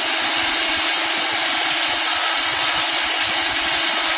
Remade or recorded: recorded